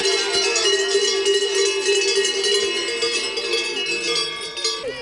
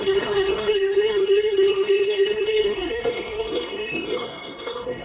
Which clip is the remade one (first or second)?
second